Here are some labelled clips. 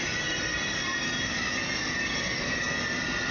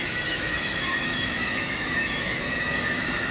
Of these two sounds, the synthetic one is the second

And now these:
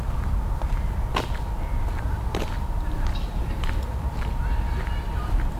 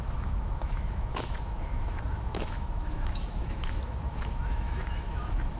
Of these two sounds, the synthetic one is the second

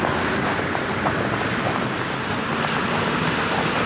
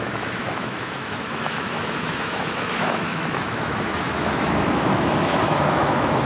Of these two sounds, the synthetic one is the second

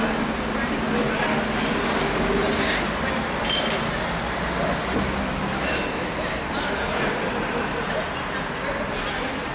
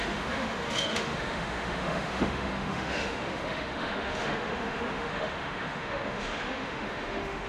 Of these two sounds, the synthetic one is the second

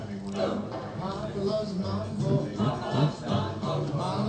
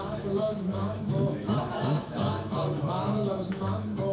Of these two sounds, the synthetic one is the second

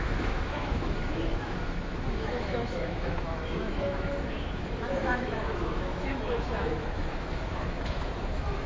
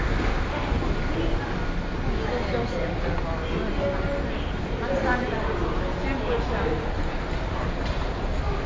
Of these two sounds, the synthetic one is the first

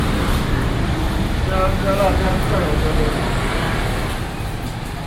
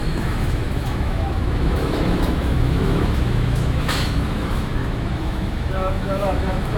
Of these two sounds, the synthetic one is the second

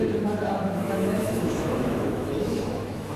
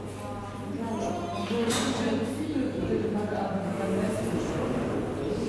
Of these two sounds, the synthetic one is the first